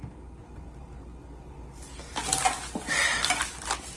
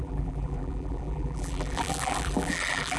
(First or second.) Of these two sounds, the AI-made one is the second